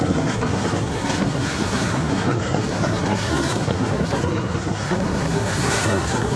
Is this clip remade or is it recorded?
remade